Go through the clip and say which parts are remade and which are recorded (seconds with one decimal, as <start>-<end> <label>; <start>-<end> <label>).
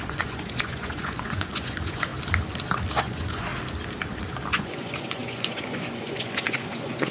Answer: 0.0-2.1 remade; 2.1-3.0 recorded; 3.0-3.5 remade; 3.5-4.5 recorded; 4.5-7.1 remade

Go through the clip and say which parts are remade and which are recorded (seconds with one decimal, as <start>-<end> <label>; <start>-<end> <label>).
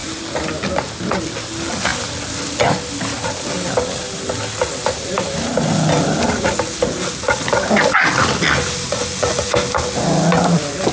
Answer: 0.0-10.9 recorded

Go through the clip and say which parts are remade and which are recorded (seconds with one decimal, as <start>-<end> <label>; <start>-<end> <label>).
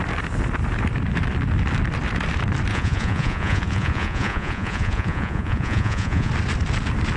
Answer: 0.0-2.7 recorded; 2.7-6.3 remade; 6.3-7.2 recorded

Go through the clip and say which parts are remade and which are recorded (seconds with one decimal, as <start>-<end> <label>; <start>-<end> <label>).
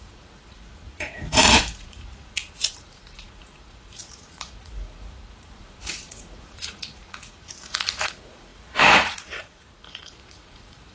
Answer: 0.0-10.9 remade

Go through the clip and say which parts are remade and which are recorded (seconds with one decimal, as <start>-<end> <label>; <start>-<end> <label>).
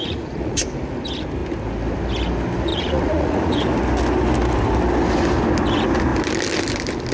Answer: 0.0-0.6 remade; 0.6-2.7 recorded; 2.7-3.6 remade; 3.6-7.1 recorded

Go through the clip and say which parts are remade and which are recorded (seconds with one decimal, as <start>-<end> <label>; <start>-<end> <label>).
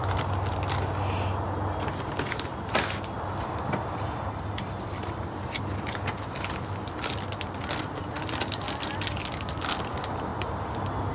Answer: 0.0-11.1 recorded